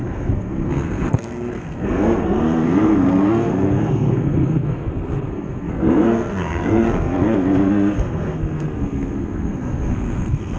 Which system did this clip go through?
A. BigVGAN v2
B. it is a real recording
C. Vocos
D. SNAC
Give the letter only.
D